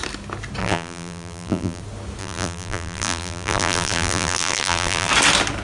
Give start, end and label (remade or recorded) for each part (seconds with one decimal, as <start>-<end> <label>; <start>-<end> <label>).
0.0-0.6 recorded; 0.6-1.8 remade; 1.8-2.2 recorded; 2.2-5.1 remade; 5.1-5.6 recorded